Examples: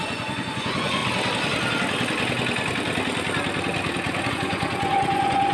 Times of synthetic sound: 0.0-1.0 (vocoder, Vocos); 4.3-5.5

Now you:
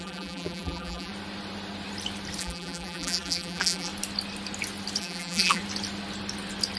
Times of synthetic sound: 0.0-1.1 (vocoder, BigVGAN v2); 2.4-3.9; 5.0-5.6

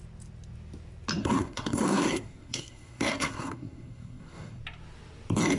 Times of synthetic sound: 1.2-4.6 (codec, SNAC)

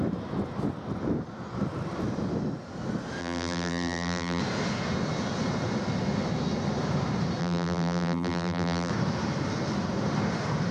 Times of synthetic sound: 3.2-4.4 (vocoder, BigVGAN v2); 7.4-8.9

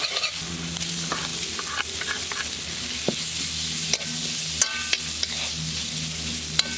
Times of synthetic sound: none

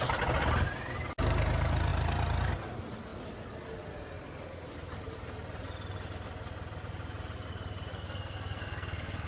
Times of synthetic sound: 7.9-9.3 (codec, SNAC)

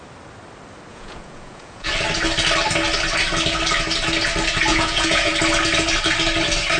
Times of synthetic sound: 0.9-1.9 (vocoder, Vocos); 4.7-5.3

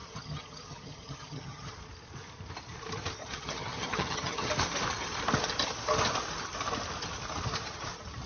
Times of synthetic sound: 0.0-1.7 (vocoder, HiFi-GAN); 3.2-4.5